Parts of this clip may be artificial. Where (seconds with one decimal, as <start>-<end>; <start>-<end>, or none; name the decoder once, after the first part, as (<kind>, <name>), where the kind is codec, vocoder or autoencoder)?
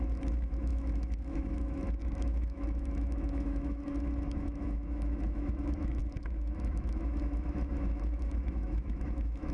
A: 0.0-9.5 (autoencoder, DAC-VAE)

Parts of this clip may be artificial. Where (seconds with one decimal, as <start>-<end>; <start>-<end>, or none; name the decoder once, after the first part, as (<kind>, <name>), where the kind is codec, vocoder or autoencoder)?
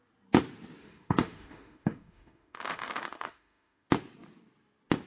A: 0.8-3.9 (autoencoder, DAC-VAE)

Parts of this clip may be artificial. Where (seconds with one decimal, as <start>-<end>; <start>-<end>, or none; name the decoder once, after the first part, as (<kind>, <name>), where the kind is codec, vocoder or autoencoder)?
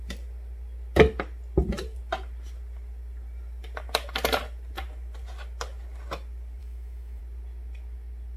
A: 6.6-7.2 (autoencoder, DAC-VAE)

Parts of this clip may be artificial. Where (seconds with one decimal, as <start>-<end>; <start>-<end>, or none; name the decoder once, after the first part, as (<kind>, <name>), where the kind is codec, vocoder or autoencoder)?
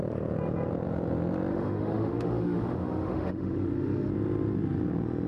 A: 1.5-4.1 (autoencoder, DAC-VAE)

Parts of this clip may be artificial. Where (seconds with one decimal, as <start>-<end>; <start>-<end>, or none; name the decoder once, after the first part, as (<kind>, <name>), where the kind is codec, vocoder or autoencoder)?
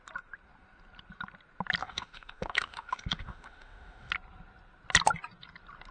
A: 1.8-4.1 (autoencoder, DAC-VAE)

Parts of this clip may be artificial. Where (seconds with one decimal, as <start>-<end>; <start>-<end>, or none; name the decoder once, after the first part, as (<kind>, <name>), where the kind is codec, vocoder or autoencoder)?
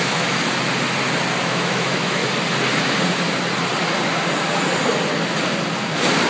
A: 0.0-0.4 (autoencoder, DAC-VAE); 1.4-2.2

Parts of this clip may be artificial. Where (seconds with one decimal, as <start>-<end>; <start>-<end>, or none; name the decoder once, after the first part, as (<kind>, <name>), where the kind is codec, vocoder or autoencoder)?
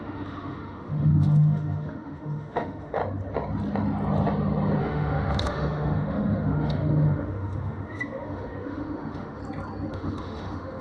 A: 0.0-3.0 (autoencoder, DAC-VAE); 4.8-9.4; 9.9-10.8